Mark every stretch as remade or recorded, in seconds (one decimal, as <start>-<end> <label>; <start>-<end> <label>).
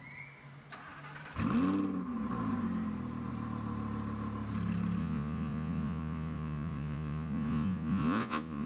0.0-5.0 recorded; 5.0-8.7 remade